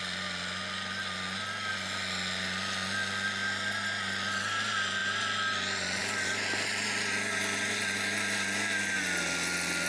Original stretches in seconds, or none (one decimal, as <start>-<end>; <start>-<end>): 0.0-9.9